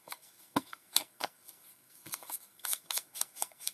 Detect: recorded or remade remade